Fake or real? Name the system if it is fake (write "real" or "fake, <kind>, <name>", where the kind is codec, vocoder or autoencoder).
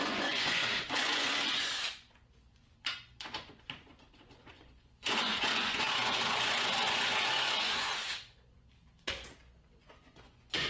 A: fake, vocoder, Vocos